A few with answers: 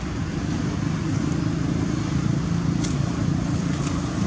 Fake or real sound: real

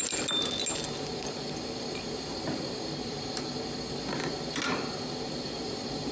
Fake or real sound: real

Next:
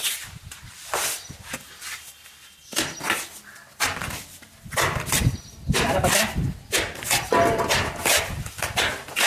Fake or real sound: real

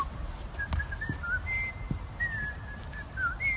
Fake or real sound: real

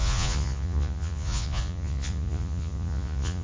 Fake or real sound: fake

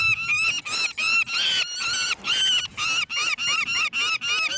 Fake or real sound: real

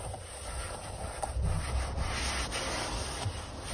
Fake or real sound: real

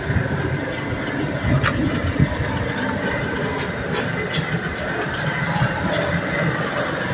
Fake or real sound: real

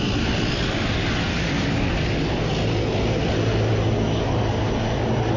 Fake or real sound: real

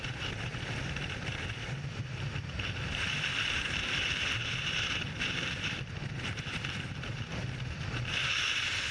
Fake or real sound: fake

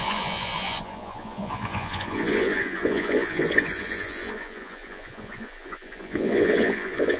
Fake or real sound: fake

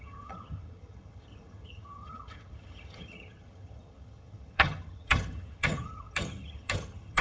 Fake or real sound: fake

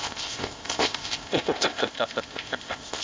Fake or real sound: fake